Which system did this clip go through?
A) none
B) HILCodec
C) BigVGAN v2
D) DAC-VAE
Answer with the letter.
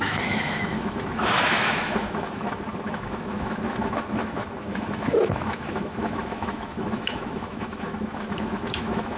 D